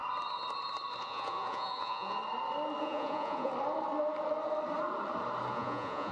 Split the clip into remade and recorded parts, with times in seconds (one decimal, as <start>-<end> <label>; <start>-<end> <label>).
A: 0.0-1.0 recorded; 1.0-2.2 remade; 2.2-2.8 recorded; 2.8-3.5 remade; 3.5-5.5 recorded; 5.5-6.1 remade